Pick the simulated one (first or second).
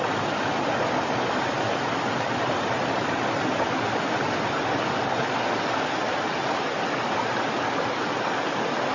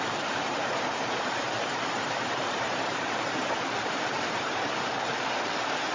second